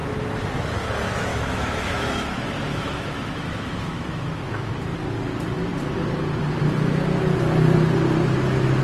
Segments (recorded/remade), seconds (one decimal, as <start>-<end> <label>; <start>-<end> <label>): 0.0-1.3 recorded; 1.3-4.7 remade; 4.7-8.8 recorded